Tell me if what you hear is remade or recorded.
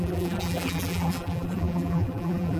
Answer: remade